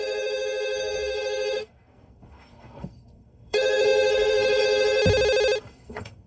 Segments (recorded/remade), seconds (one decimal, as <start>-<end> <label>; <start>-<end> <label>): 0.0-5.0 remade; 5.0-5.6 recorded; 5.6-6.3 remade